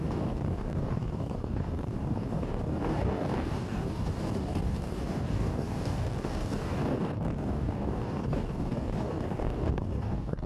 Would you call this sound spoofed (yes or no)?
yes